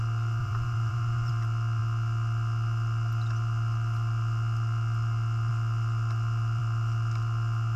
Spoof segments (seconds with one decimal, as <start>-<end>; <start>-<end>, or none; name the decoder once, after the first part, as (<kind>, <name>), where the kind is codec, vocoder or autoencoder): 0.4-1.3 (vocoder, BigVGAN v2)